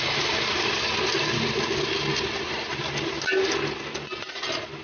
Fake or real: real